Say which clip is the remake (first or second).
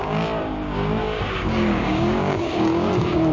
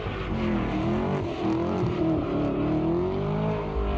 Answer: first